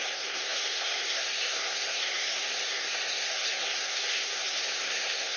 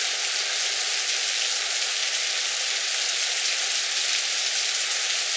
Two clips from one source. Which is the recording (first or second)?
second